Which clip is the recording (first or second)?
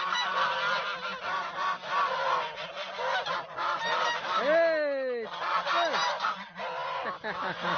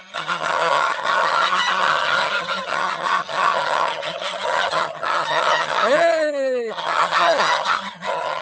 first